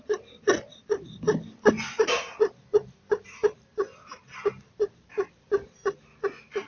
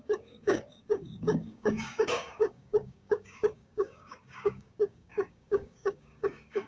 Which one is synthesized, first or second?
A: second